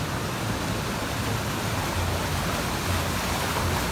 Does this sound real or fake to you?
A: real